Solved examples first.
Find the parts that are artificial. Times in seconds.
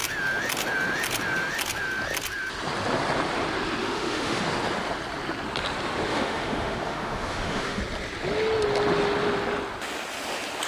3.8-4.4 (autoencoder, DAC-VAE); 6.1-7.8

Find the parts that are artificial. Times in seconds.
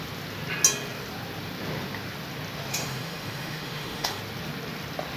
2.7-4.2 (autoencoder, DAC-VAE)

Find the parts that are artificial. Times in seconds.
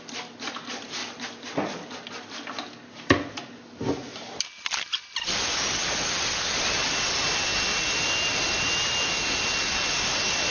none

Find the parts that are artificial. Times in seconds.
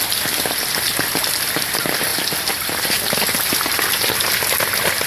none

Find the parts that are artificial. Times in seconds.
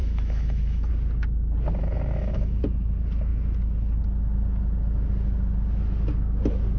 0.0-0.9 (autoencoder, DAC-VAE); 1.8-2.6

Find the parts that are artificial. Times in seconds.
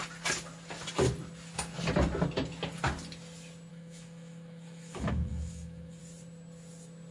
3.7-6.0 (autoencoder, DAC-VAE)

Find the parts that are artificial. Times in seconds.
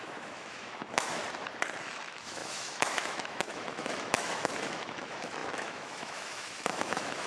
0.0-1.2 (autoencoder, DAC-VAE); 1.8-7.3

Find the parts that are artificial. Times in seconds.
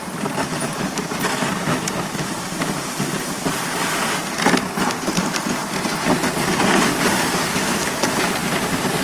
none